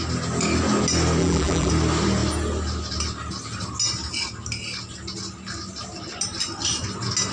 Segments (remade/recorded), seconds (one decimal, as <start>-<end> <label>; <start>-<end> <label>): 0.0-1.2 recorded; 1.2-1.7 remade; 1.7-7.3 recorded